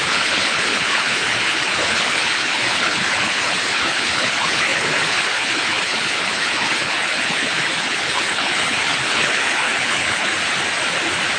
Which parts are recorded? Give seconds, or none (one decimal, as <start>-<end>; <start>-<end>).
10.3-11.4